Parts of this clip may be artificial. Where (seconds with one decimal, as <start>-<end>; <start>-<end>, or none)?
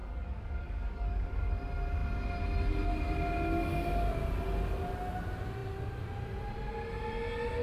0.0-1.5